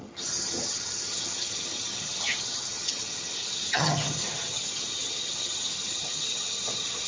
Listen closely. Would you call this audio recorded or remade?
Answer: remade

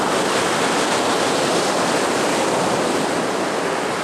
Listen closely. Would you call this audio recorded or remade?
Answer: recorded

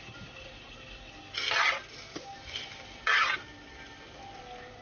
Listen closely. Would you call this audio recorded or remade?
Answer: recorded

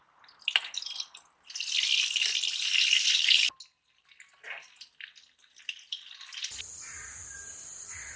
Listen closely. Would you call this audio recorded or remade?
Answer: recorded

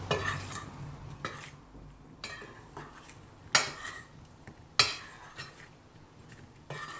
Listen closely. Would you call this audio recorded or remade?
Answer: recorded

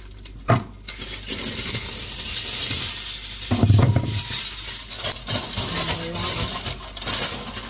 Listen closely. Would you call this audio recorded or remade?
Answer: recorded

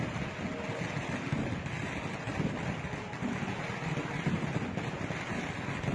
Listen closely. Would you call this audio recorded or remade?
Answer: recorded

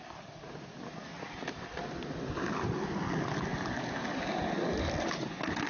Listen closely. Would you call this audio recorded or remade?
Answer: recorded